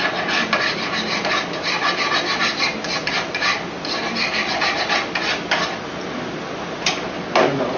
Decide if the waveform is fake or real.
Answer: real